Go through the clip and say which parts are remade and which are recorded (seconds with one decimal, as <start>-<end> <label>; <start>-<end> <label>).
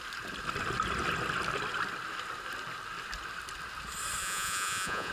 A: 0.0-4.2 recorded; 4.2-5.1 remade